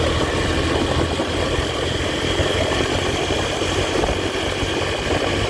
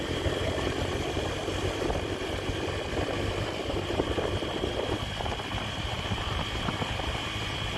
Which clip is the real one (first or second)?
first